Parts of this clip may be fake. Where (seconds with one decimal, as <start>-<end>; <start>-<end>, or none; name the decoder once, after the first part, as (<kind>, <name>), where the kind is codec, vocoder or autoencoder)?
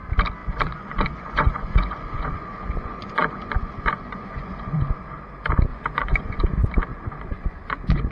0.4-4.9 (vocoder, Vocos); 5.7-6.4; 6.9-8.1